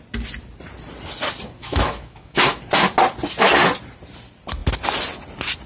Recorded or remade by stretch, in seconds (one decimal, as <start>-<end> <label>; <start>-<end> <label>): 0.0-1.6 recorded; 1.6-2.6 remade; 2.6-5.7 recorded